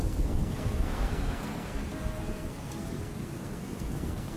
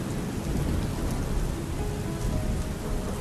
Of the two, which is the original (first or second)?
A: second